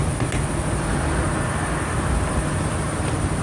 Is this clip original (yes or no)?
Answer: yes